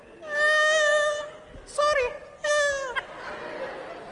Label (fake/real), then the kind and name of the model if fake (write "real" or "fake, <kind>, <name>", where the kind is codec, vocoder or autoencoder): real